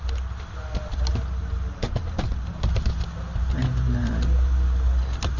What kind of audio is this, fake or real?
real